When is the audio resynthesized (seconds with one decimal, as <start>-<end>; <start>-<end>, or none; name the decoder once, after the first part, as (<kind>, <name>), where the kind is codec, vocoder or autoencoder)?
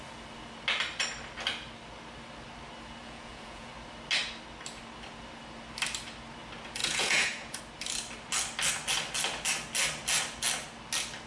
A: 3.0-3.7 (vocoder, Vocos); 6.8-7.6